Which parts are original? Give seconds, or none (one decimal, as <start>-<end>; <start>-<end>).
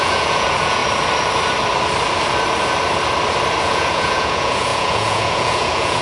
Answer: 0.8-3.6